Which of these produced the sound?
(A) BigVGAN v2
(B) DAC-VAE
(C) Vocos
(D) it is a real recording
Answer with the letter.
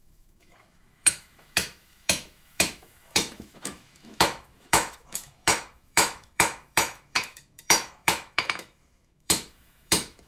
B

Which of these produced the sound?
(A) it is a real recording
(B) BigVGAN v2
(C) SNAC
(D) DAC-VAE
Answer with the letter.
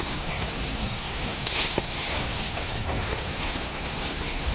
C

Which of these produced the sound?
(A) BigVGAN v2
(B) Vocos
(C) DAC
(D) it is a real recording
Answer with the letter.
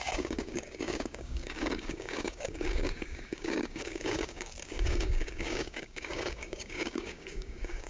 C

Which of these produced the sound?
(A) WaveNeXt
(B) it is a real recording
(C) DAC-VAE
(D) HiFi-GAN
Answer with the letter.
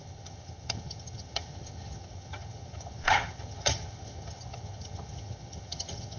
D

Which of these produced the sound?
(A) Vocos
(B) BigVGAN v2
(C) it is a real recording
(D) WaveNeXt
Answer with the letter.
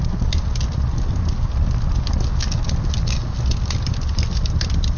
C